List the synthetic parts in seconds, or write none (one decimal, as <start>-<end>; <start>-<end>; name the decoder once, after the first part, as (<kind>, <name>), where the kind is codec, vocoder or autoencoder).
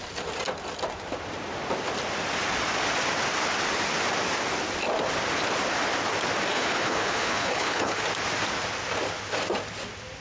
6.5-8.0 (codec, HILCodec)